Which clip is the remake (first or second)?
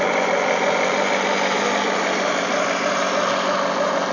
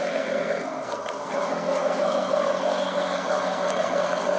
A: second